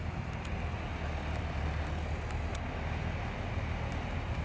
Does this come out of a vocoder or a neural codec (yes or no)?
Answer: no